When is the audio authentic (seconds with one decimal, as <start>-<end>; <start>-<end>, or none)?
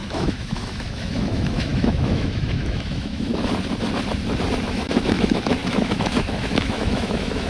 3.3-4.6